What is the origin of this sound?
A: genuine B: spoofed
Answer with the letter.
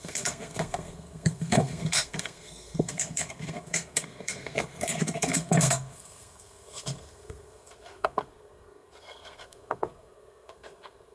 B